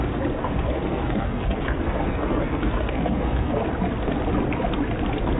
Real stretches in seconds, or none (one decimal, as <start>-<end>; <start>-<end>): 0.0-0.4; 3.6-5.4